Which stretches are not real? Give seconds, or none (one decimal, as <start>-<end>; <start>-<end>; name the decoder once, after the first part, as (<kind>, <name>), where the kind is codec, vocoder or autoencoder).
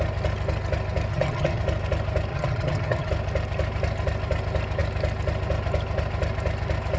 1.1-1.6 (vocoder, HiFi-GAN); 2.3-3.1